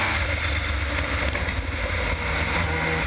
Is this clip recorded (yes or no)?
yes